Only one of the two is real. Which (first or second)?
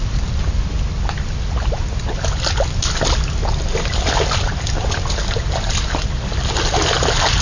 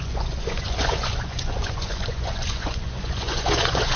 first